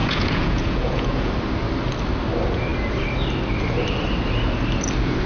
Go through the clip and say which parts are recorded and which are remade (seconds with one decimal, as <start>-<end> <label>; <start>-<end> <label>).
0.0-1.3 remade; 1.3-5.3 recorded